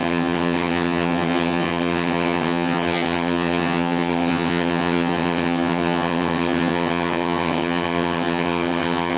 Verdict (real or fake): fake